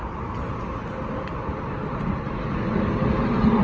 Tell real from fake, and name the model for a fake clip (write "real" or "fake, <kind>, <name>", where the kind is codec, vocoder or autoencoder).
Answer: real